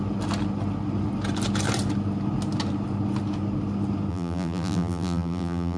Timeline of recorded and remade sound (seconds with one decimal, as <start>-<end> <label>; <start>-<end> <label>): 0.0-4.1 recorded; 4.1-5.8 remade